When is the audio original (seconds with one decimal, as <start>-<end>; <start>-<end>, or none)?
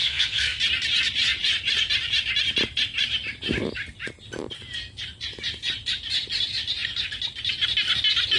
0.6-8.4